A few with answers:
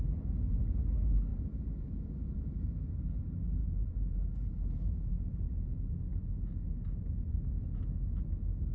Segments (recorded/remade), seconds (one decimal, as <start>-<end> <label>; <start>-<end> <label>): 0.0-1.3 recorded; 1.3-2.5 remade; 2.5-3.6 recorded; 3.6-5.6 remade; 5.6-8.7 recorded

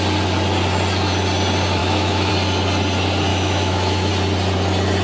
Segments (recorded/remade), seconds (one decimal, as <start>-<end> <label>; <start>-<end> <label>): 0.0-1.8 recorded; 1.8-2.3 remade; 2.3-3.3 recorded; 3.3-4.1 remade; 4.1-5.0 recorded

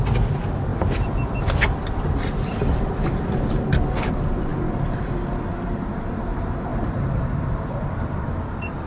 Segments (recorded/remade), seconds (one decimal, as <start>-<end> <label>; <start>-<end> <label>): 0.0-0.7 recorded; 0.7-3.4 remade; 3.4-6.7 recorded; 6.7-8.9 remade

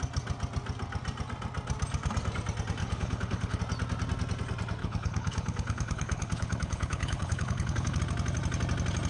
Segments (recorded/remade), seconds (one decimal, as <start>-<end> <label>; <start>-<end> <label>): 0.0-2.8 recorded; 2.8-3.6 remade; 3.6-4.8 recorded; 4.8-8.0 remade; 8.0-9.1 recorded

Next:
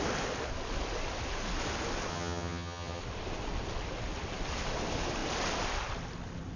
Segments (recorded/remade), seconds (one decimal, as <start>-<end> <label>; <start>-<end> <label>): 0.0-2.1 recorded; 2.1-3.0 remade; 3.0-6.6 recorded